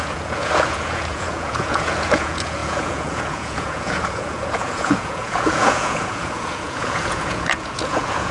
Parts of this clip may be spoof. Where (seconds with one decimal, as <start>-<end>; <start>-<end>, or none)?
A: 0.0-8.3